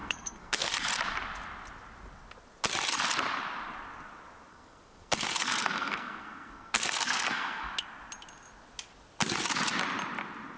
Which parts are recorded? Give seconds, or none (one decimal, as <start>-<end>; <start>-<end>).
0.7-4.5; 7.7-10.6